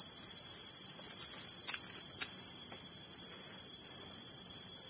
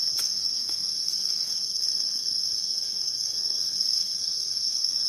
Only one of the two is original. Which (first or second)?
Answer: first